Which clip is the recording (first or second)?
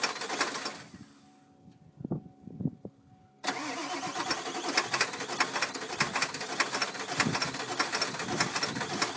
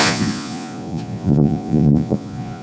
first